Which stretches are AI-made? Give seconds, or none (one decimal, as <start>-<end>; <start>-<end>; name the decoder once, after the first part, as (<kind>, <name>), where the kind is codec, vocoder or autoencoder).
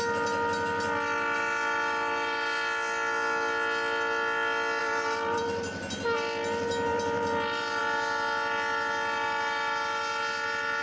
4.8-5.4 (vocoder, BigVGAN v2); 6.9-7.8